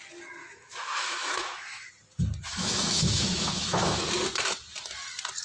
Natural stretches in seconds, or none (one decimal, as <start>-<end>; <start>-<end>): 0.0-0.4; 1.9-2.5; 4.0-5.4